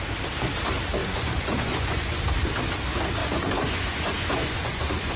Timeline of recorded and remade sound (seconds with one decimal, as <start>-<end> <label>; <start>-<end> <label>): 0.0-1.0 recorded; 1.0-2.2 remade; 2.2-3.2 recorded; 3.2-5.2 remade